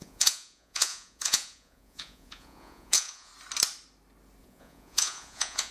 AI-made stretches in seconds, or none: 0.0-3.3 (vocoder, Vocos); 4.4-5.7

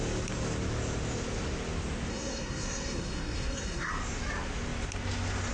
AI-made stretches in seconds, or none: 2.1-3.9 (codec, SNAC)

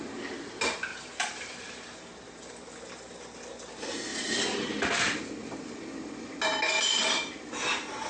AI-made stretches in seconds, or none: 0.9-2.4 (vocoder, BigVGAN v2); 4.1-4.9

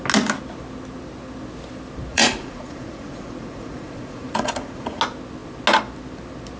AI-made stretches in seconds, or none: 2.1-5.0 (vocoder, Vocos)

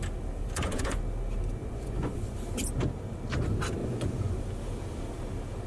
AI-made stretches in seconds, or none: 0.4-1.0 (vocoder, Vocos); 1.6-2.4; 3.8-4.4

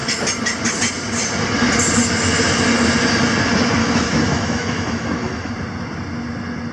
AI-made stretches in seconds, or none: 3.8-5.5 (autoencoder, DAC-VAE)